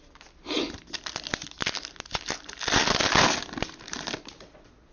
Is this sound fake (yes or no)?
no